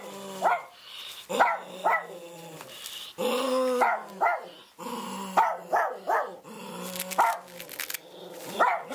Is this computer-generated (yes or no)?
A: no